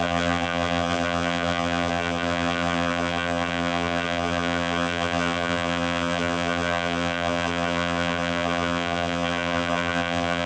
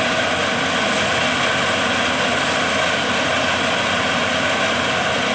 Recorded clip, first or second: second